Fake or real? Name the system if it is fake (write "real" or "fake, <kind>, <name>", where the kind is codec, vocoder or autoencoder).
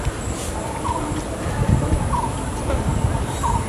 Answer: real